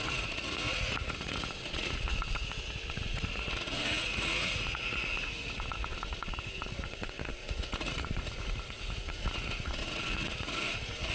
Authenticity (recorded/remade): remade